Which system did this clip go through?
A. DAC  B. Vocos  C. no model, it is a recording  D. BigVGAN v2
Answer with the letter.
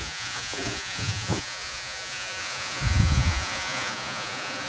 B